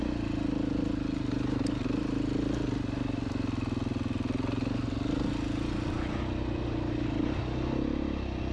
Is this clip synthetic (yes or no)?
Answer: no